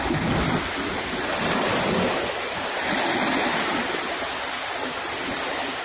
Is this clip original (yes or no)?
yes